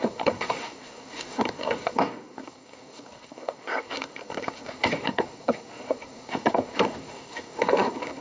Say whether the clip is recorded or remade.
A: remade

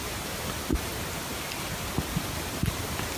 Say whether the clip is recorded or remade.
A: recorded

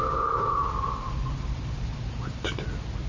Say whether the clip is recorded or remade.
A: recorded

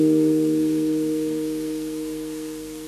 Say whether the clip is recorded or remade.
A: remade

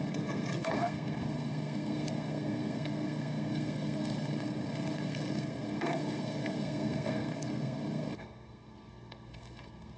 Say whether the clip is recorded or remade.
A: remade